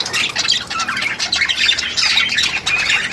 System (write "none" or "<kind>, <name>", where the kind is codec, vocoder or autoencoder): none